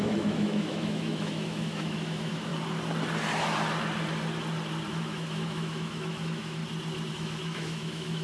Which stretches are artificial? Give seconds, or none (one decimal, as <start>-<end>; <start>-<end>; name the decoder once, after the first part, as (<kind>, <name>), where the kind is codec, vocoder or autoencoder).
0.0-2.5 (autoencoder, DAC-VAE); 4.9-6.6; 7.1-8.2